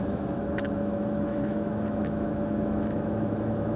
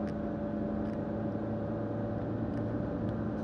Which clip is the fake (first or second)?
first